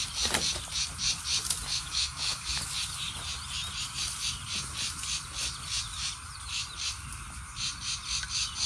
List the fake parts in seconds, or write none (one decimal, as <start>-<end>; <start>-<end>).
1.7-2.6